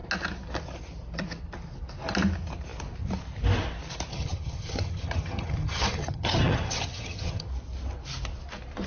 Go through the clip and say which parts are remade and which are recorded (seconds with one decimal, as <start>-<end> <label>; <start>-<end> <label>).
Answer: 0.0-4.1 recorded; 4.1-7.5 remade; 7.5-8.9 recorded